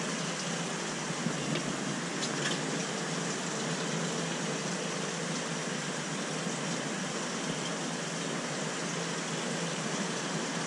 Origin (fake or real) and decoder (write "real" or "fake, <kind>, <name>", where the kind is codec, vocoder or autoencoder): real